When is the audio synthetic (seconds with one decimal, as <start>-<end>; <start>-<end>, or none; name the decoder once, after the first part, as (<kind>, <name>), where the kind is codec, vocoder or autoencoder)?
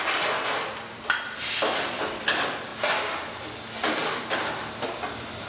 none